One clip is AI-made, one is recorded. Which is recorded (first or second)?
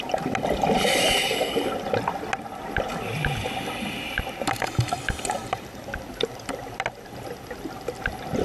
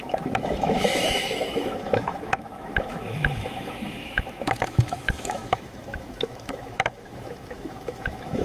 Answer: first